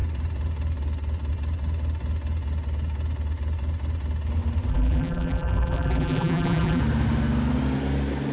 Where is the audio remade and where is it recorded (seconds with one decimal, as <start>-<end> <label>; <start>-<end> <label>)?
0.0-4.7 recorded; 4.7-6.8 remade; 6.8-8.3 recorded